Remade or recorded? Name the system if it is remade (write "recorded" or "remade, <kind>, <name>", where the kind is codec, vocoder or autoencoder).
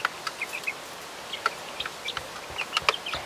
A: recorded